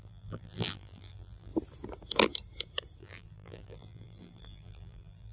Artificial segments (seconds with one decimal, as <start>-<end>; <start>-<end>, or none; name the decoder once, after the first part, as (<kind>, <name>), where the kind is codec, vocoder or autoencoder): 0.0-1.5 (vocoder, BigVGAN v2); 3.0-5.3